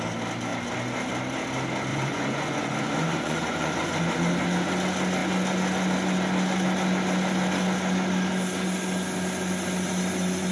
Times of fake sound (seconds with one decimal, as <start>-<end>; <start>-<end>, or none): 1.9-4.0